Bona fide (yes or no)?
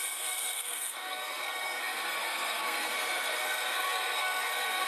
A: no